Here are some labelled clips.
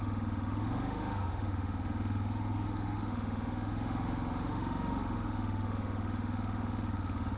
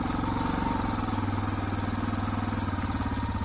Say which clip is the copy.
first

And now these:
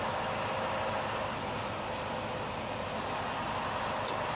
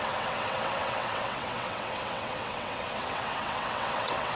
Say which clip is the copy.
second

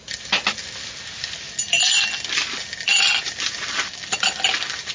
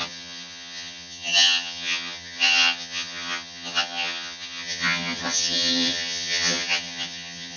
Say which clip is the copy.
second